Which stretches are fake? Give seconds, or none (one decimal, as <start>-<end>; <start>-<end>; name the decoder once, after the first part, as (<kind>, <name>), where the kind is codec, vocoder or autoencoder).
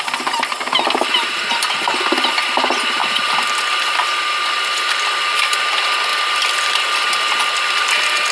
none